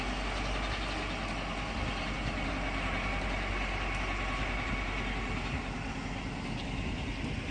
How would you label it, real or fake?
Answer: real